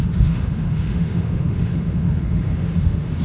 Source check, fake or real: fake